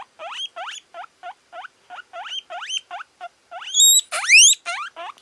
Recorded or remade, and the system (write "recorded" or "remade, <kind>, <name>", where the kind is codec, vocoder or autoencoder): recorded